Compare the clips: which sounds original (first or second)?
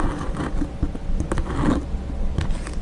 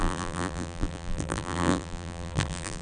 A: first